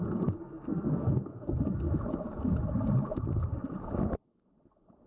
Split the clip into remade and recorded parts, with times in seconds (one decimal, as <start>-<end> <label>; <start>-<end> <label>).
0.0-0.4 recorded; 0.4-1.9 remade; 1.9-5.1 recorded

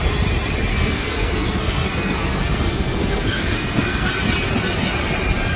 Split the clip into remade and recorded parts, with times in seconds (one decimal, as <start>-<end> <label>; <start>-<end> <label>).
0.0-0.7 recorded; 0.7-4.1 remade; 4.1-5.6 recorded

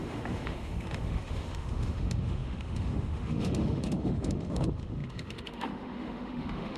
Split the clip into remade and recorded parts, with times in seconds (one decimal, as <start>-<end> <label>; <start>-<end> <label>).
0.0-6.8 remade

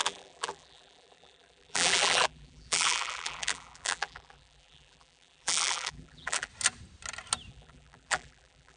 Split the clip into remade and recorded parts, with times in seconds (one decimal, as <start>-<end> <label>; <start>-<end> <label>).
0.0-6.5 remade; 6.5-7.5 recorded; 7.5-8.8 remade